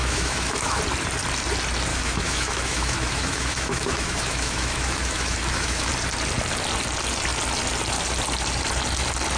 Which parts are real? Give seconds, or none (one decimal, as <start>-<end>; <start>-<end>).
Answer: 0.8-1.9; 5.9-9.4